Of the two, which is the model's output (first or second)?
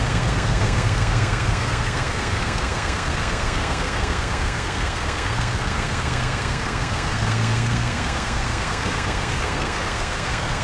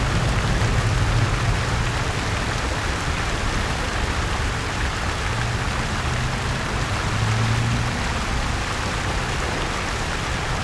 first